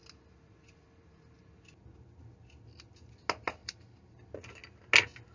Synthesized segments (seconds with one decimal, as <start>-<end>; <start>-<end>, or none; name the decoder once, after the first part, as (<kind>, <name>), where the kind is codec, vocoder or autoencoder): 3.6-4.1 (vocoder, BigVGAN v2)